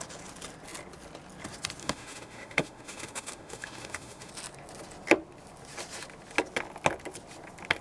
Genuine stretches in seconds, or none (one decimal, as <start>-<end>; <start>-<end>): 0.0-1.8; 4.3-7.8